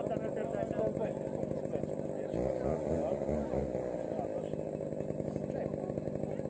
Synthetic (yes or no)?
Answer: no